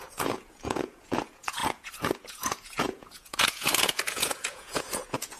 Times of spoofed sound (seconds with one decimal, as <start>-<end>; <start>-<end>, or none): 0.0-5.4